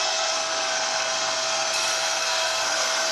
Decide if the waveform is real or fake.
fake